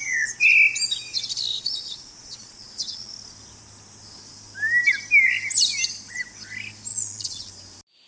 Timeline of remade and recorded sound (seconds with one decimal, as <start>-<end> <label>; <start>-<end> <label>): 0.0-1.5 recorded; 1.5-3.1 remade; 3.1-6.9 recorded; 6.9-7.5 remade; 7.5-8.1 recorded